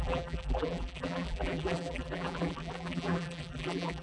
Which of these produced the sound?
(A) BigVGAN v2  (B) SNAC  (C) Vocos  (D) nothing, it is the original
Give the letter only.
A